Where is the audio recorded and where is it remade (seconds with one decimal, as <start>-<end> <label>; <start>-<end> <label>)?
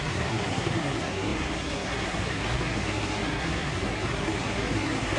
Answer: 0.0-5.2 remade